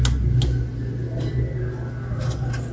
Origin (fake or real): real